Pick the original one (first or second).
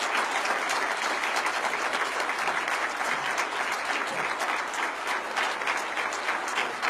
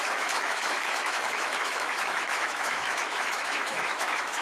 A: first